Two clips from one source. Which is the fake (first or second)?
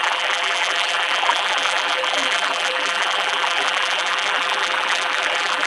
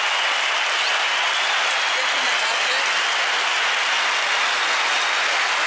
first